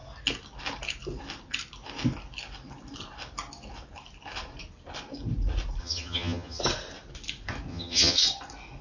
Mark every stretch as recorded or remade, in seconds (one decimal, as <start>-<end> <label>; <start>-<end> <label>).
0.0-5.8 recorded; 5.8-6.6 remade; 6.6-7.7 recorded; 7.7-8.2 remade; 8.2-8.8 recorded